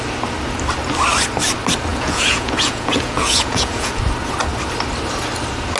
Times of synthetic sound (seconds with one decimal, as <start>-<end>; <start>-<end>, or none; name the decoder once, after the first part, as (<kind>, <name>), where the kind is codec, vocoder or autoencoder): 1.9-4.0 (vocoder, Vocos)